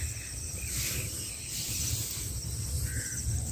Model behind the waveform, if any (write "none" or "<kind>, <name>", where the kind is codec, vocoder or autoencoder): none